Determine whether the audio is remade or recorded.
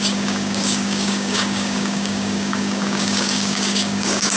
remade